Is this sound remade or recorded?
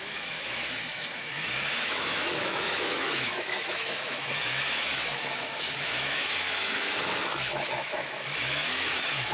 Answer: remade